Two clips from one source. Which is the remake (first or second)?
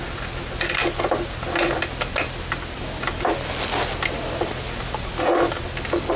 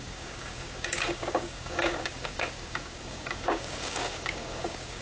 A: second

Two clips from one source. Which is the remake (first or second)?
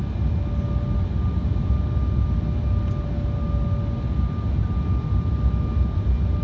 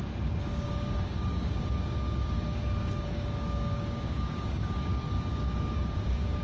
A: second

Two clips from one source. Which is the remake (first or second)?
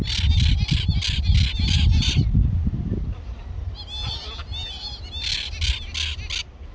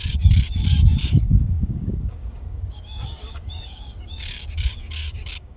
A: second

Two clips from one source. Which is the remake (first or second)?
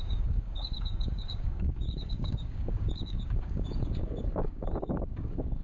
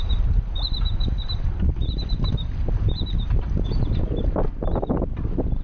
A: first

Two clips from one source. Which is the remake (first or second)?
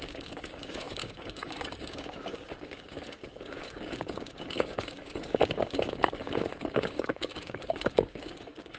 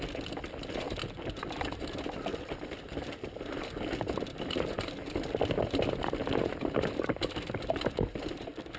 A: first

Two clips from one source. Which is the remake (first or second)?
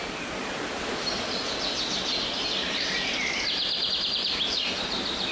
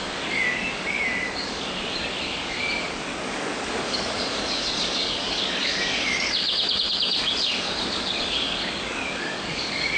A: second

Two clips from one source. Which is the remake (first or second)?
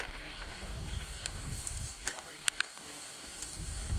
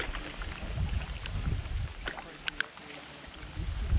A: first